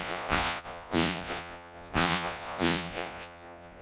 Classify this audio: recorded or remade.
remade